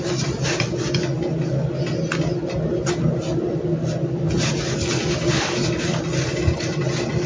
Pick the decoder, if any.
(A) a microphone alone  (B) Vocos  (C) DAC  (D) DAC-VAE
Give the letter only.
A